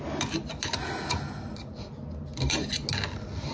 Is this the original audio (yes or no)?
yes